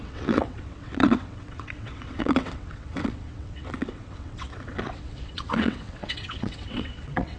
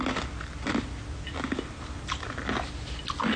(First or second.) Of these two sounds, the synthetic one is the first